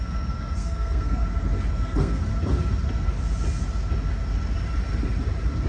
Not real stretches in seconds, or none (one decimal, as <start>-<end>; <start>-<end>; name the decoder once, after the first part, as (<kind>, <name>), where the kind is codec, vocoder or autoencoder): 0.0-1.2 (codec, SNAC); 1.7-2.3